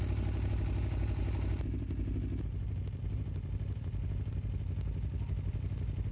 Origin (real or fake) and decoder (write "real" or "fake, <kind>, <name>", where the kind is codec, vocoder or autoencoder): real